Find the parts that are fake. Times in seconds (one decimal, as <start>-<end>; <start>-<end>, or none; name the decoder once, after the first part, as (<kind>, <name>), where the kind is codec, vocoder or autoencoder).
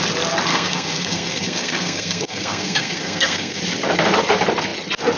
0.5-3.6 (codec, SNAC)